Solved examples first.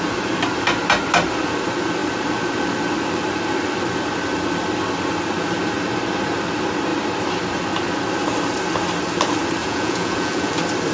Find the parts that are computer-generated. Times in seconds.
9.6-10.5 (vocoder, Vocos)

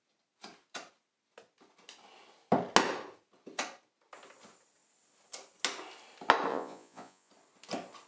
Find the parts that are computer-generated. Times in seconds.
6.5-7.3 (vocoder, Vocos)

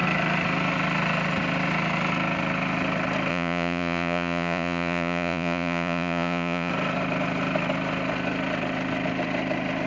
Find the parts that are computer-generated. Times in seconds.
3.3-6.7 (vocoder, Vocos)

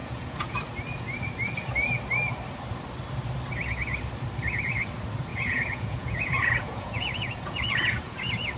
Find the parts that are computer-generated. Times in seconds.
0.0-0.5 (vocoder, Vocos); 5.3-8.2

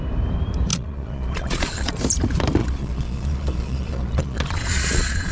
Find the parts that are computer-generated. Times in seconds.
0.7-1.9 (vocoder, Vocos); 2.6-5.3

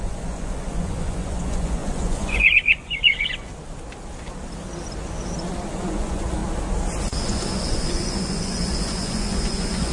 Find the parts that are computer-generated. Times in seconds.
0.0-3.5 (vocoder, Vocos); 5.7-6.4; 7.2-9.9